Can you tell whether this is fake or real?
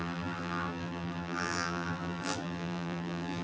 fake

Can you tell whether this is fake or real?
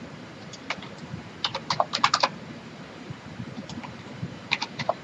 fake